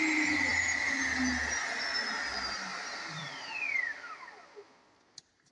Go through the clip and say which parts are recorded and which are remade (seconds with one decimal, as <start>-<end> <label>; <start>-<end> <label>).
0.0-5.5 recorded